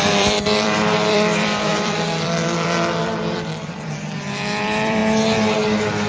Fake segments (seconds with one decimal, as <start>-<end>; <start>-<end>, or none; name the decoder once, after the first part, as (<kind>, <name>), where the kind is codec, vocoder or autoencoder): 0.0-5.0 (vocoder, BigVGAN v2)

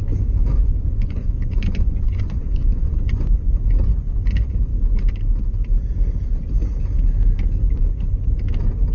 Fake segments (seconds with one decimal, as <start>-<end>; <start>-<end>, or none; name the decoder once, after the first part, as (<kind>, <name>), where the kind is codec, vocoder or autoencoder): 0.5-3.5 (vocoder, Vocos)